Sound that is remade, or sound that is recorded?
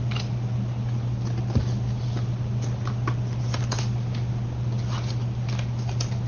recorded